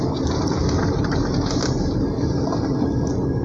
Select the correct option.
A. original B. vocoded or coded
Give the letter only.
A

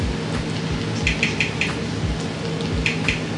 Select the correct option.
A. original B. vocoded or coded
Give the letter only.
A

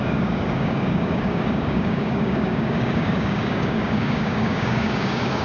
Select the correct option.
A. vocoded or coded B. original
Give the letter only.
A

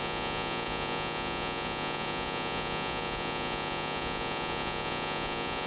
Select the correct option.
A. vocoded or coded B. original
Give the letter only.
A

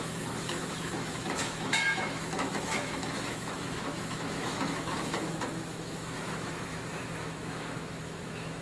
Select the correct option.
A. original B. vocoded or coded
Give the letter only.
B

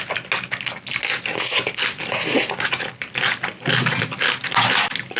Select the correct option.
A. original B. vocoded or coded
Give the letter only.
A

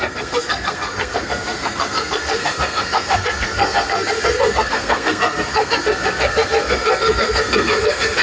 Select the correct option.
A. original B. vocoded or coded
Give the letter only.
B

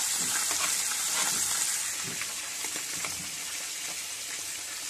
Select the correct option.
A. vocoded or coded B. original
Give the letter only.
B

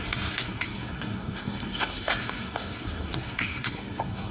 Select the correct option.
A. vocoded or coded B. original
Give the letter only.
A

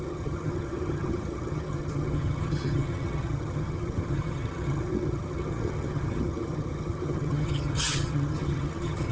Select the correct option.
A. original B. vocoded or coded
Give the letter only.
B